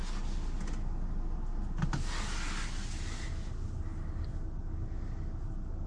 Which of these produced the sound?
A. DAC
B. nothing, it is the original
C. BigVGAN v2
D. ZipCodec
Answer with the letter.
B